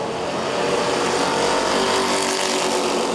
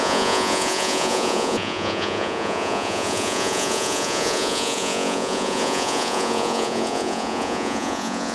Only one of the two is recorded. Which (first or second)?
first